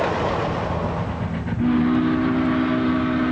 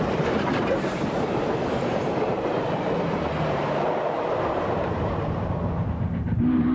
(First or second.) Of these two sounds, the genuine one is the first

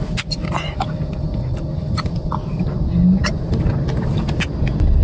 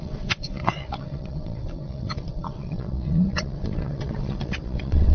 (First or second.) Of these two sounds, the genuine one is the first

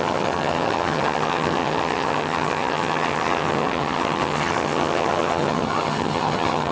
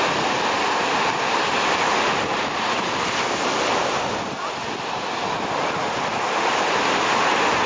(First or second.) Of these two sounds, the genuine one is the second